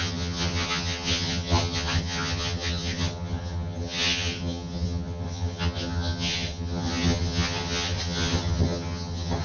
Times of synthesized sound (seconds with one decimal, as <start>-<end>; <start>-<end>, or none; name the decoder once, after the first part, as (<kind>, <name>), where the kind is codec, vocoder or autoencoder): 0.0-9.4 (vocoder, HiFi-GAN)